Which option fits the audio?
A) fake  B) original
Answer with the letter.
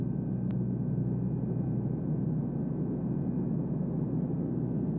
B